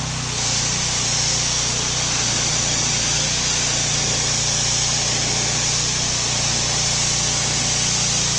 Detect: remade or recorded recorded